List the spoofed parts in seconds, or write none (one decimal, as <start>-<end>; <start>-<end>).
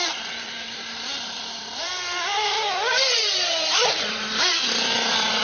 0.0-1.9; 2.9-5.4